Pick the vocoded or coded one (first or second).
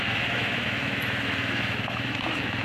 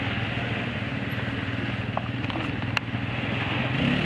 first